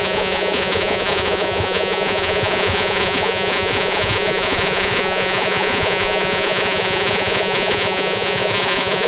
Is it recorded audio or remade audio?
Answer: remade